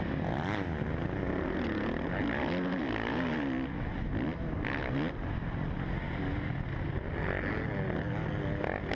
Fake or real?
real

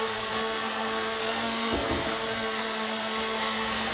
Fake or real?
fake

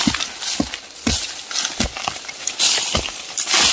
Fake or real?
real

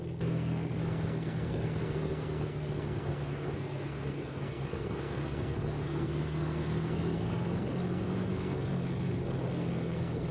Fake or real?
fake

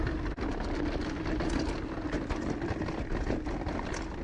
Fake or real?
real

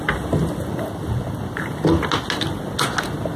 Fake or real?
real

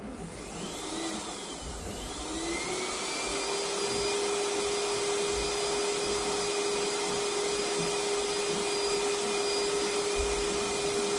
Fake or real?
real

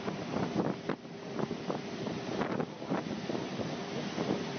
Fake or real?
real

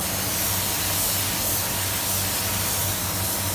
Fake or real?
real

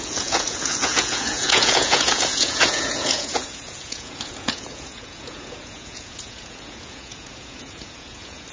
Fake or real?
fake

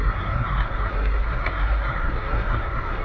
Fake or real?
fake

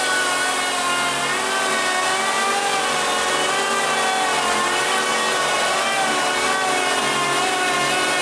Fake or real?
real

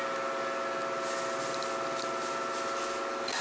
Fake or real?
real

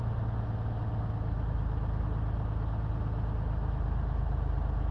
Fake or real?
real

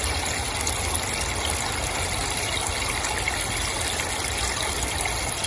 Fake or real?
real